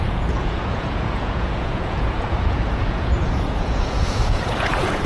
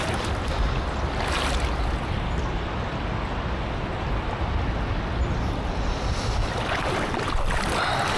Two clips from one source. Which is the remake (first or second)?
first